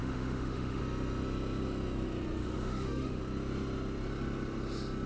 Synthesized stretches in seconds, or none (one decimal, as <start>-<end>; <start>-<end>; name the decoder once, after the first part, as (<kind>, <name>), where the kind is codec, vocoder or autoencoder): 0.0-0.8 (autoencoder, DAC-VAE); 2.4-3.2